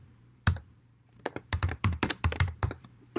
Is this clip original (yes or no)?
no